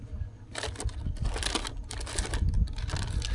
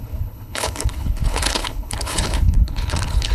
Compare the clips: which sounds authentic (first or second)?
first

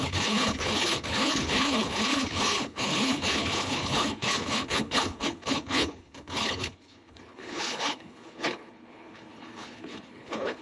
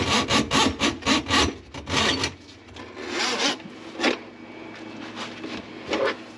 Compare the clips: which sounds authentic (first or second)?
second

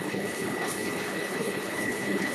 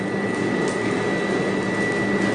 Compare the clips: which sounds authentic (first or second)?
second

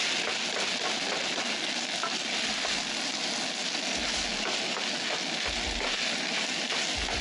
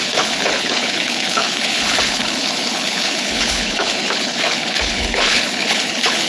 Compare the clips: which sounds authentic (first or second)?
first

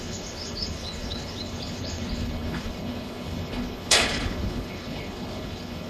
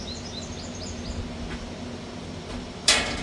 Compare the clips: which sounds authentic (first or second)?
second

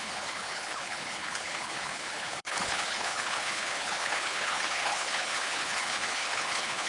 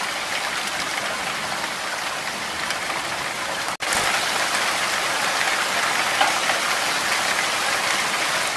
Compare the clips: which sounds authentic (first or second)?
second